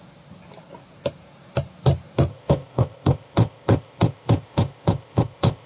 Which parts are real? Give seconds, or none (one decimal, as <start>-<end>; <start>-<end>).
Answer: 0.0-2.3